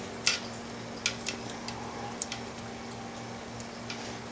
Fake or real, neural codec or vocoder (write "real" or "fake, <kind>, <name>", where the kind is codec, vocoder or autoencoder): real